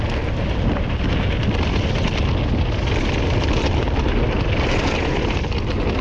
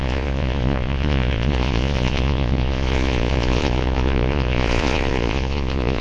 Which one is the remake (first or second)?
second